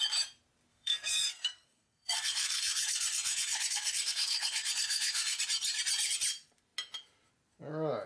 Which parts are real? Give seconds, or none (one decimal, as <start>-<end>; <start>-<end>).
0.0-0.7; 5.4-8.1